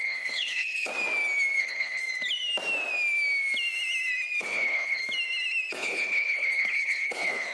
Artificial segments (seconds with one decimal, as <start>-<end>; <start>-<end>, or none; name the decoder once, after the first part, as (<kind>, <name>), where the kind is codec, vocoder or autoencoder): 0.0-0.9 (codec, HILCodec); 1.6-2.0; 4.4-5.0; 5.7-7.5